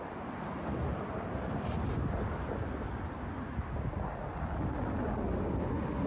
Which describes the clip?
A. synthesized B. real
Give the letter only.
B